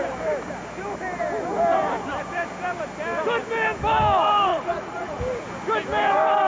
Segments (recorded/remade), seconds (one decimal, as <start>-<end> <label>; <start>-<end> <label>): 0.0-4.5 recorded; 4.5-5.2 remade; 5.2-6.5 recorded